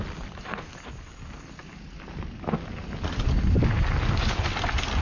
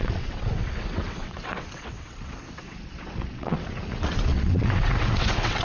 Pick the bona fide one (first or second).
first